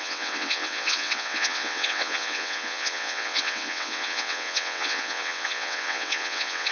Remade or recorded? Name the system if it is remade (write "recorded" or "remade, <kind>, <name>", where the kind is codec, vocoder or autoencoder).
remade, vocoder, WaveNeXt